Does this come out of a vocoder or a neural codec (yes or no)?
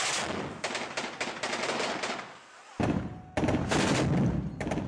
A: no